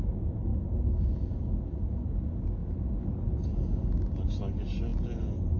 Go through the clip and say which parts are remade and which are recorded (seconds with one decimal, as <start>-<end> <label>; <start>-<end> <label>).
0.0-5.6 recorded